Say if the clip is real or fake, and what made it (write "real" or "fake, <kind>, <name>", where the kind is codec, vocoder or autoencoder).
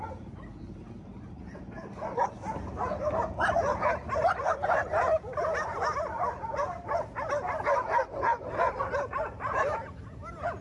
real